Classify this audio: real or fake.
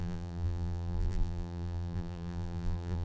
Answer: fake